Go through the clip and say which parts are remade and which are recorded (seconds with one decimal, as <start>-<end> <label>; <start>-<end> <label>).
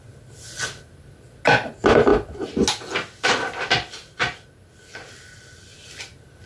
0.0-6.5 recorded